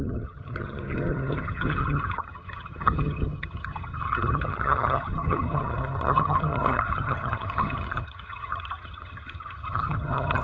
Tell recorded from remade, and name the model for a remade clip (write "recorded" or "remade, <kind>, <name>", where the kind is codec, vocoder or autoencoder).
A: remade, vocoder, HiFi-GAN